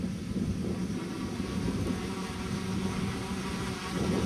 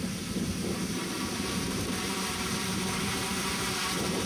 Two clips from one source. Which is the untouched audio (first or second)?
first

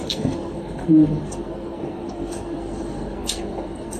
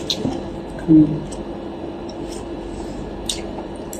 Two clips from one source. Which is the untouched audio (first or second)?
second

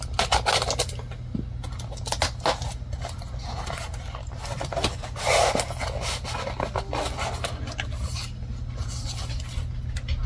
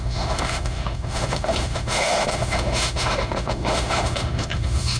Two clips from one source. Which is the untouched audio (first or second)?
first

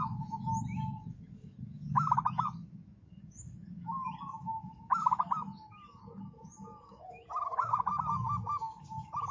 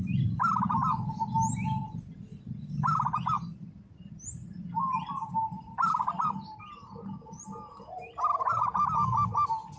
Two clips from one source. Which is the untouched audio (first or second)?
second